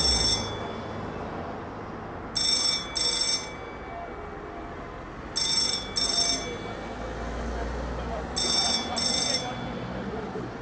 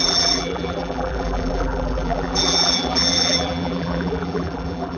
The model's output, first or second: second